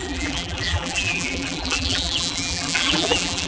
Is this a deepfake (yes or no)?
yes